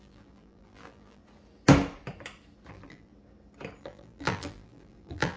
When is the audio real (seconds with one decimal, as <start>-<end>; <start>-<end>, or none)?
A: 1.2-2.7; 3.1-3.8

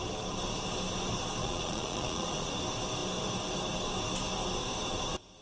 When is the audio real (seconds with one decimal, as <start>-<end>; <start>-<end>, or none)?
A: 0.0-1.4; 2.5-5.4

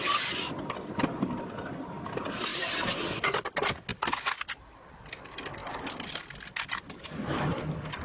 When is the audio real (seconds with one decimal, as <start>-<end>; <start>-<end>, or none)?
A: 0.0-8.0

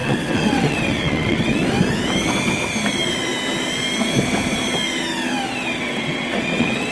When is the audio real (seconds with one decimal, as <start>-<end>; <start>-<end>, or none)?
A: 1.6-5.7

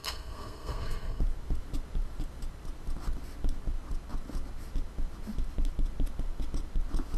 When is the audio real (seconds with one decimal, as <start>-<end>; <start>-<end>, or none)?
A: 1.2-7.2